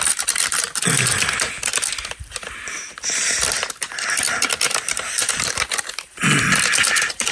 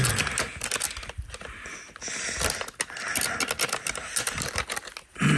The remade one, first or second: first